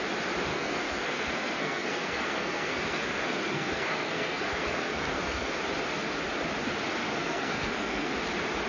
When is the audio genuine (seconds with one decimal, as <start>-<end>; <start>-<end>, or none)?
0.0-0.5; 5.6-7.0; 8.1-8.7